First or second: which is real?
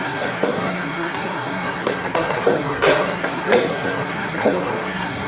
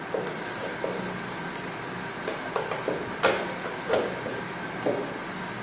second